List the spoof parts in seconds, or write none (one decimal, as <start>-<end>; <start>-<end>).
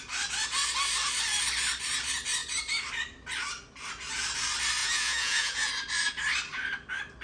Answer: 4.8-5.7